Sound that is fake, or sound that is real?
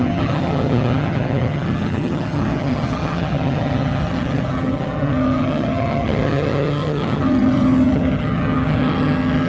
fake